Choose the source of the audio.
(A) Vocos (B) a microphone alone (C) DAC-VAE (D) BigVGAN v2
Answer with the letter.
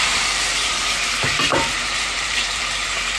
D